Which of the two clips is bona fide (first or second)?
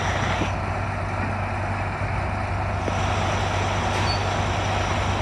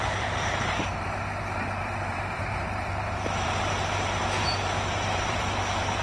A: first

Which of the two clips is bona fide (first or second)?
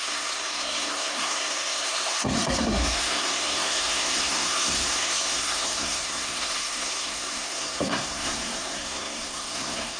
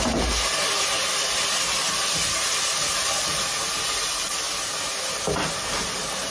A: second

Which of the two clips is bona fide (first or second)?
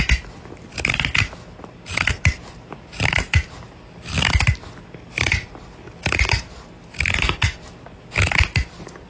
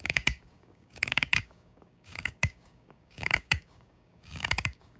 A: first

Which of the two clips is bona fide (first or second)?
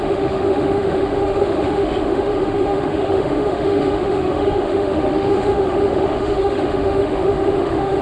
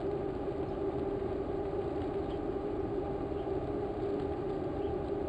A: second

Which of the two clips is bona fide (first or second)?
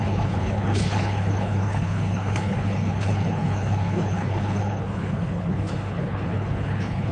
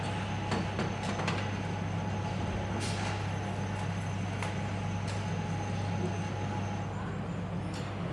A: second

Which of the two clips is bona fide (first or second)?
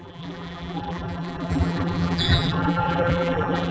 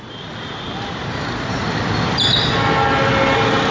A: second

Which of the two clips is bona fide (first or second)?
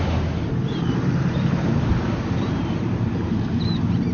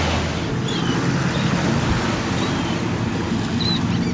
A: second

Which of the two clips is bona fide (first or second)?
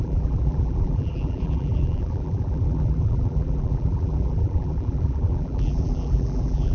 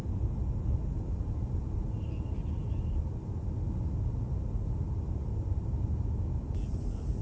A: second